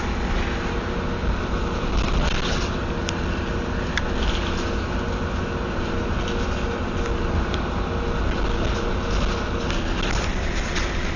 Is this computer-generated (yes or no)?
no